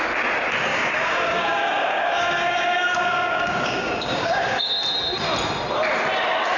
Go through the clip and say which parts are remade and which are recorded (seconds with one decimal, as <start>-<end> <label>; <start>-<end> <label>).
0.0-0.7 recorded; 0.7-4.7 remade; 4.7-6.6 recorded